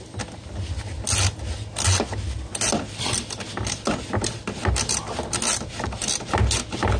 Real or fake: real